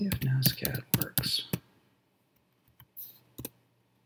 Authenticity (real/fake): real